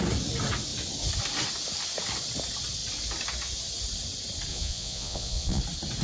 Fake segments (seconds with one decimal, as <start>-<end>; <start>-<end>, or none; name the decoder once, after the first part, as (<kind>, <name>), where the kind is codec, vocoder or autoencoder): 4.5-5.6 (vocoder, Vocos)